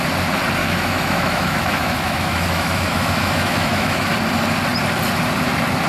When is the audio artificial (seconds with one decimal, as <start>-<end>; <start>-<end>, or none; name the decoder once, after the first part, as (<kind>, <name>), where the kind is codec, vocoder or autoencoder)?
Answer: 0.6-4.1 (autoencoder, DAC-VAE)